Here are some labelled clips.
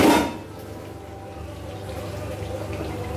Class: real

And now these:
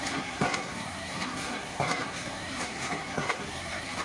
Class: fake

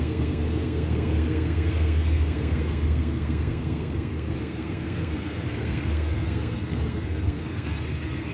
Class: fake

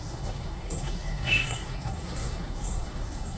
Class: fake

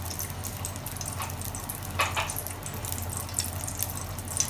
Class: real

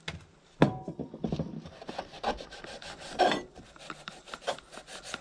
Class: real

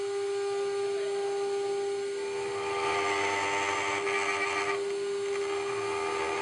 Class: real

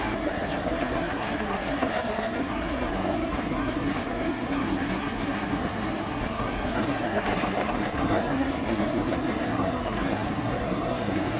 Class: fake